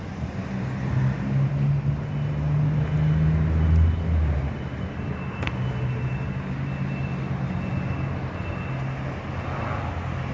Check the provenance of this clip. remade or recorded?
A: recorded